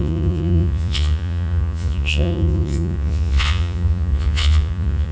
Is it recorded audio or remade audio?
remade